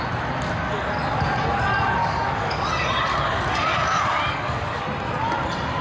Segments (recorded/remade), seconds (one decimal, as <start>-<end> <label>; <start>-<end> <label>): 0.0-2.0 recorded; 2.0-2.7 remade; 2.7-3.1 recorded; 3.1-4.8 remade; 4.8-5.8 recorded